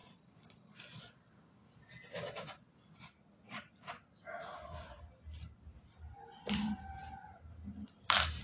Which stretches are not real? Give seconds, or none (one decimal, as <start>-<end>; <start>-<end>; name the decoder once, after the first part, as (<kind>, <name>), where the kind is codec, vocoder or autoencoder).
none